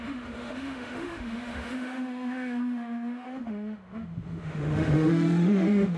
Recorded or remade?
remade